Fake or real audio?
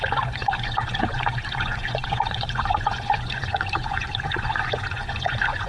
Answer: fake